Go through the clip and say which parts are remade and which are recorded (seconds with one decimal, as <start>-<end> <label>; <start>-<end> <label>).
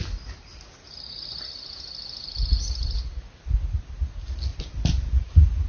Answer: 0.0-4.5 recorded; 4.5-5.2 remade; 5.2-5.7 recorded